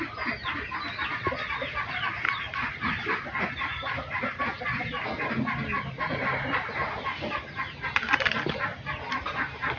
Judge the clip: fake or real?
real